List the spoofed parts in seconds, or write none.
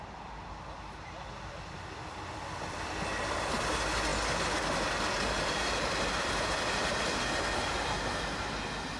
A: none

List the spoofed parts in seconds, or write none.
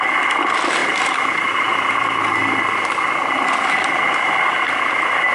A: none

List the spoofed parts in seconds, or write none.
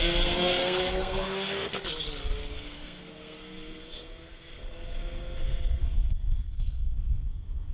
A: 0.0-1.7 (codec, SNAC); 2.5-7.7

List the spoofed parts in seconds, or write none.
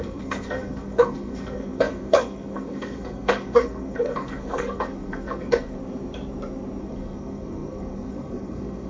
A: 0.0-5.8 (codec, SNAC); 6.8-8.9